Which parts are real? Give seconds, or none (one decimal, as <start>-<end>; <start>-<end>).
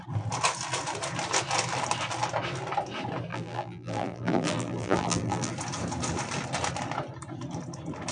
0.0-3.3; 5.5-8.1